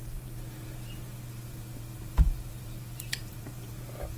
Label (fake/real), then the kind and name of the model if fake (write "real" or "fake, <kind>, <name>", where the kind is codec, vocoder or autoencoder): fake, vocoder, BigVGAN v2